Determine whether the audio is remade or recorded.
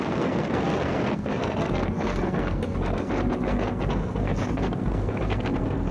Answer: remade